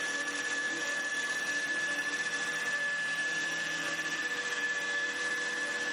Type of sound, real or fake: fake